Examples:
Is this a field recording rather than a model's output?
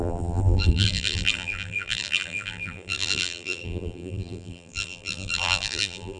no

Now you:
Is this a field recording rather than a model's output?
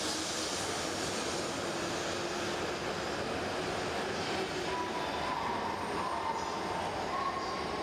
yes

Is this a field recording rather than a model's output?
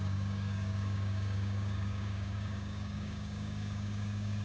no